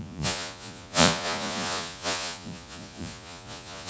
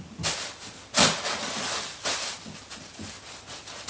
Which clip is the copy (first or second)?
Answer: first